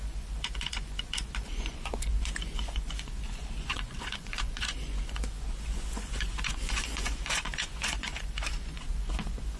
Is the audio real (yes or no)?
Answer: no